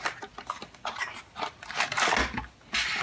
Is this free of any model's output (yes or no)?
yes